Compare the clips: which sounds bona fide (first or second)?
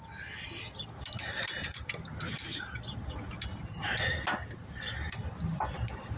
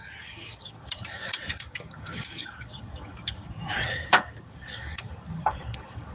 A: first